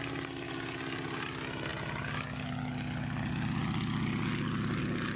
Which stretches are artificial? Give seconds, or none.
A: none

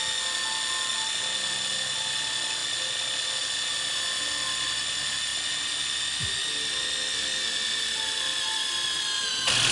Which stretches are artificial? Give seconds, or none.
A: none

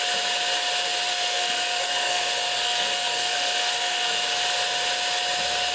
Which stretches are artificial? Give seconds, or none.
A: 1.1-4.2 (codec, SNAC)

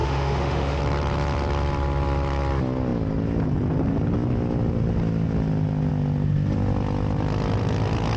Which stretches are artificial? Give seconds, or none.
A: 0.0-0.8 (autoencoder, DAC-VAE)

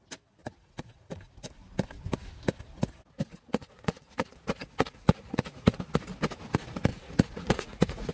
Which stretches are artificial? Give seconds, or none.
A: 0.4-1.2 (vocoder, Vocos); 3.3-5.8; 6.9-8.1